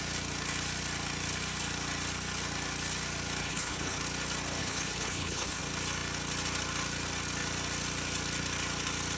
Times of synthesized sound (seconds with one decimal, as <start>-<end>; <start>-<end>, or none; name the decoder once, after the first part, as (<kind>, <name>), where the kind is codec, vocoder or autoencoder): 3.4-4.0 (codec, HILCodec); 4.6-5.6